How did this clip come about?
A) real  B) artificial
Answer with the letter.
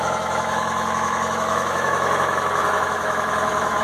B